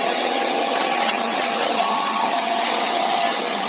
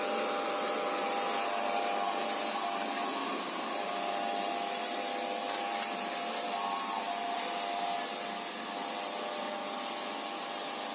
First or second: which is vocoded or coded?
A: first